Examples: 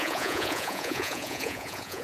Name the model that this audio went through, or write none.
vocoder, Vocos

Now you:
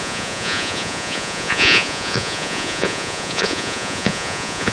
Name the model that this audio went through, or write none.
vocoder, Vocos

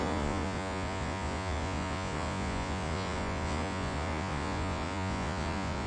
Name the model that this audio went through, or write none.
vocoder, Vocos